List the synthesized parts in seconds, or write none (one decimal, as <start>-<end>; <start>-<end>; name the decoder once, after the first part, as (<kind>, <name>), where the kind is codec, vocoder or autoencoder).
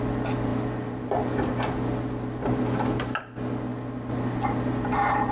none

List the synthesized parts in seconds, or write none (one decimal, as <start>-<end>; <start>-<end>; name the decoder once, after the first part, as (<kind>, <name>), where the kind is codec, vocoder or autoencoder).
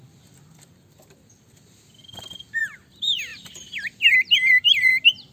none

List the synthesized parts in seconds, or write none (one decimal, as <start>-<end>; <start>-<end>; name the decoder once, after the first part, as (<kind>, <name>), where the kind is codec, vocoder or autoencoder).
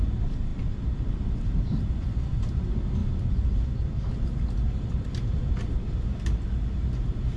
none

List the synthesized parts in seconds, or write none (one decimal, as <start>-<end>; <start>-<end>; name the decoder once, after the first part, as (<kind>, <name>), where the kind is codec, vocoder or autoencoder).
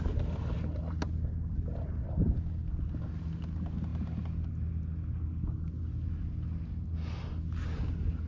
none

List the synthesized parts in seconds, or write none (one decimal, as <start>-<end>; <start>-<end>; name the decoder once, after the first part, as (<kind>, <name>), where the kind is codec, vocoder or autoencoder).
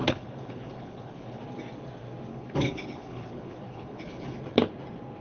0.0-1.4 (codec, HILCodec); 2.3-4.4